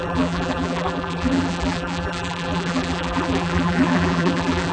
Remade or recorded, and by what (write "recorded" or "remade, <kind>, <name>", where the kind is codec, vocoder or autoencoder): remade, vocoder, BigVGAN v2